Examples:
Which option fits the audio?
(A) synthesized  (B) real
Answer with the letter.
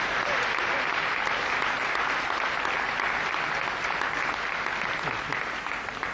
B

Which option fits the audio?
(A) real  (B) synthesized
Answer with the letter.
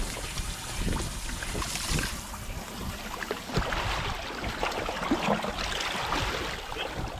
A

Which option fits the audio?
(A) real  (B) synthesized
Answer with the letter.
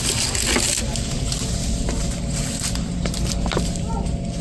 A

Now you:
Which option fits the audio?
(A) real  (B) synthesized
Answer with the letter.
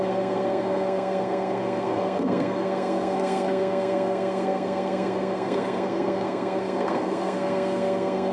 B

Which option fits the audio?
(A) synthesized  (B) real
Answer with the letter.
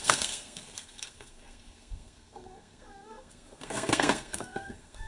A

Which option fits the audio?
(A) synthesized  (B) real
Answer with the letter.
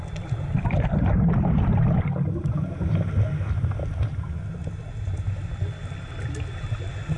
B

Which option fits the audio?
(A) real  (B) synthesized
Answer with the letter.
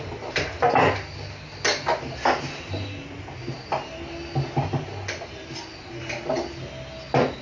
A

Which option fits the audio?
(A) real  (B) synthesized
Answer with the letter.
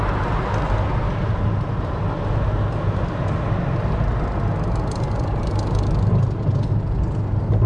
A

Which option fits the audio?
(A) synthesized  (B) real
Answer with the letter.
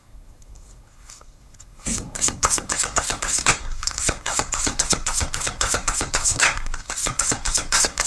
A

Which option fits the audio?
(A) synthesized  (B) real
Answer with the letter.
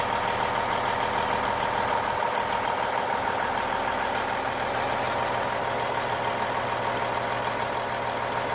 B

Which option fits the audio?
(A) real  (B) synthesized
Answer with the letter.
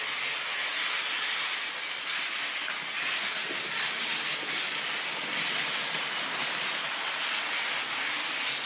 A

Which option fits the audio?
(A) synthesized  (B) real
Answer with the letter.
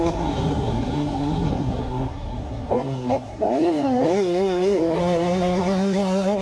A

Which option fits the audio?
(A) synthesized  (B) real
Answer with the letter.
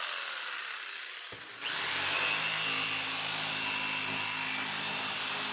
B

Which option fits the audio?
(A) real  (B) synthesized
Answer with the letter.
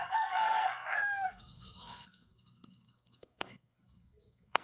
B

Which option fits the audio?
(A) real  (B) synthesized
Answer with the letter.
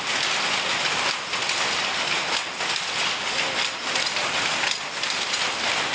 A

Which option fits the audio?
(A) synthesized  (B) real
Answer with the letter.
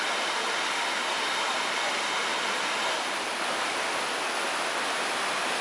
B